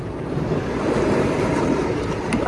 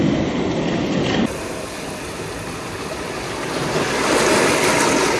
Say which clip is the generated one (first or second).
first